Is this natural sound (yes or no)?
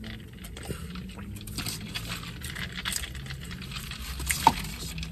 yes